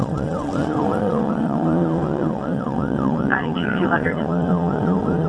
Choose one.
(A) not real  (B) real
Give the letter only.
A